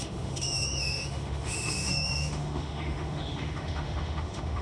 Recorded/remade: remade